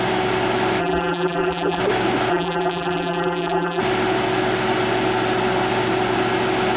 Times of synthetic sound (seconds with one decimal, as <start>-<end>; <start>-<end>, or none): 0.8-1.8; 2.3-3.8